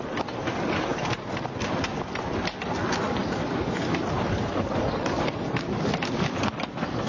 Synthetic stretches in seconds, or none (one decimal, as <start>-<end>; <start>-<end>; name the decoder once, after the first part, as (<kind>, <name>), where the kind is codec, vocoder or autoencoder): 0.9-1.9 (vocoder, BigVGAN v2); 3.2-6.0

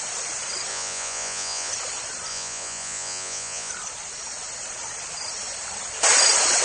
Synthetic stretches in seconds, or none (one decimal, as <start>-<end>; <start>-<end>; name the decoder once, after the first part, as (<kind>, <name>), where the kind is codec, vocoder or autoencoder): 0.7-1.7 (vocoder, Vocos); 2.3-3.7

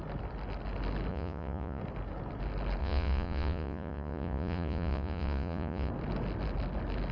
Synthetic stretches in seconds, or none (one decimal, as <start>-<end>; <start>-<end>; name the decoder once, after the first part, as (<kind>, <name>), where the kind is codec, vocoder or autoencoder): 1.1-1.8 (vocoder, Vocos); 2.8-5.9

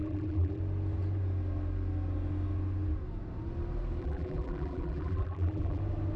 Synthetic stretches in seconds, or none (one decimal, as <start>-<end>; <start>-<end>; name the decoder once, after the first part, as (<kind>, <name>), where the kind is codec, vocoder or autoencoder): 0.0-0.6 (vocoder, BigVGAN v2); 4.0-5.8